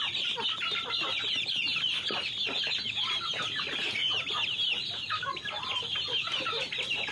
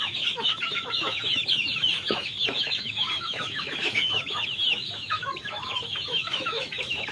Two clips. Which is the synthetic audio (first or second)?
second